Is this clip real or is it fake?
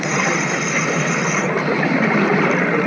real